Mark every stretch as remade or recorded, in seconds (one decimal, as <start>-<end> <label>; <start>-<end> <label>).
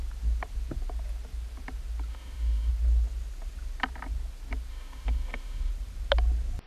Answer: 0.0-2.1 recorded; 2.1-2.7 remade; 2.7-4.7 recorded; 4.7-5.7 remade; 5.7-6.7 recorded